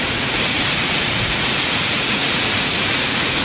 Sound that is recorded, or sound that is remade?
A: remade